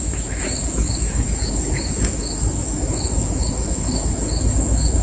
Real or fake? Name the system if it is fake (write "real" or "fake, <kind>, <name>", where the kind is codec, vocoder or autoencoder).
fake, autoencoder, DAC-VAE